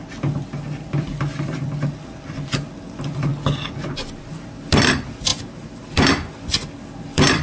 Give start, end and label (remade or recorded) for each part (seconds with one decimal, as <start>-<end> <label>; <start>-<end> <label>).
0.0-3.3 remade; 3.3-4.3 recorded; 4.3-7.4 remade